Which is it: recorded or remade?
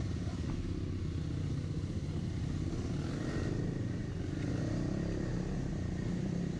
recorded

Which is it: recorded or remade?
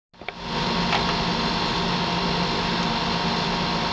recorded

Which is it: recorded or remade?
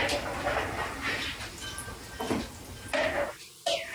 recorded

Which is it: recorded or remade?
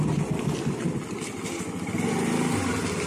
recorded